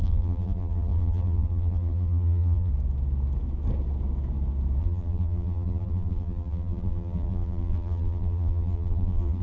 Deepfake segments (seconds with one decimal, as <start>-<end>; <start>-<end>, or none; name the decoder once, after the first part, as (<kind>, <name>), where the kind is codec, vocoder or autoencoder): 0.0-2.7 (vocoder, BigVGAN v2); 4.8-9.4